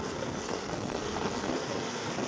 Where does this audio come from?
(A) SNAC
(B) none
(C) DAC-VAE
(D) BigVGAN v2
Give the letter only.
A